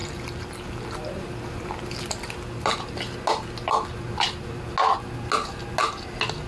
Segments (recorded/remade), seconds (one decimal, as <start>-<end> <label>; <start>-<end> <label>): 0.0-3.2 remade; 3.2-5.8 recorded; 5.8-6.5 remade